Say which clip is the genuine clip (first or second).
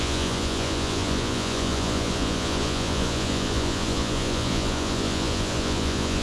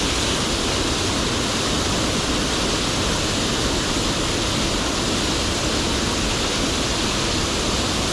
second